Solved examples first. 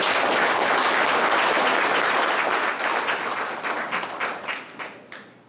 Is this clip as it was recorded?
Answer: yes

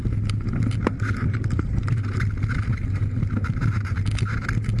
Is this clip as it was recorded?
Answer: yes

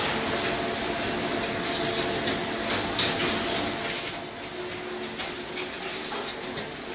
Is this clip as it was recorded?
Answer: yes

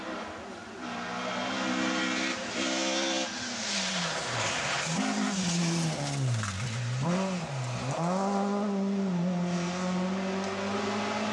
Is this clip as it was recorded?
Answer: yes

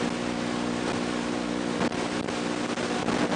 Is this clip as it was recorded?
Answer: yes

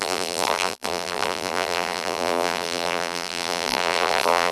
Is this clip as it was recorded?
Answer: no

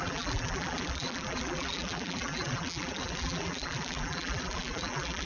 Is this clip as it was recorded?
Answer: no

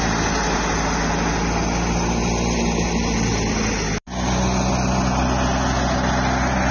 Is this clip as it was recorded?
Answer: yes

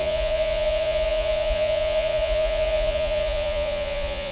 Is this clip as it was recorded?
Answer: no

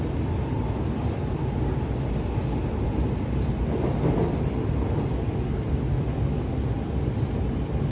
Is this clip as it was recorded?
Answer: yes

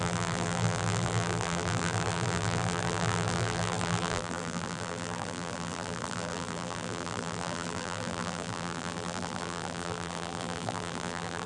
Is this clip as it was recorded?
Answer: no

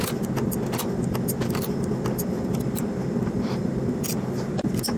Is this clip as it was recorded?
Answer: yes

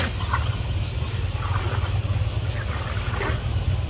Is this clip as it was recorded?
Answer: yes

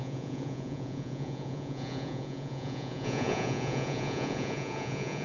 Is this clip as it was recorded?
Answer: no